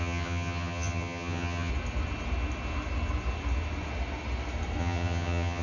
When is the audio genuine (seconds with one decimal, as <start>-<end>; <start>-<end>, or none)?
1.7-4.8